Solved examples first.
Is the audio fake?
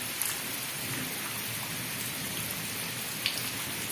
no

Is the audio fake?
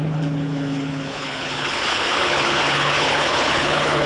yes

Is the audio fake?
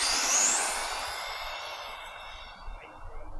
no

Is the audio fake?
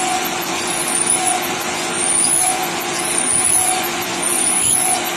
yes